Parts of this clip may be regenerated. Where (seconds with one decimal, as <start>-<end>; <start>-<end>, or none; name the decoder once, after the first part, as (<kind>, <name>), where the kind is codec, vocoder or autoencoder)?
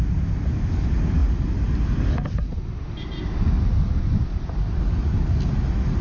none